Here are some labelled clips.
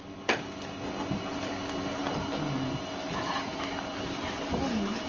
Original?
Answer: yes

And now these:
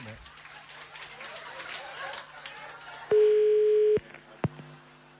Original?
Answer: yes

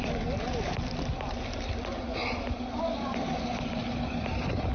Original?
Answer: yes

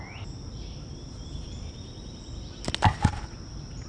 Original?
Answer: yes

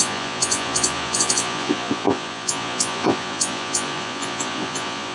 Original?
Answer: no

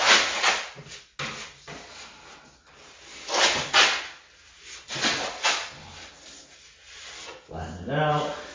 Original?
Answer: yes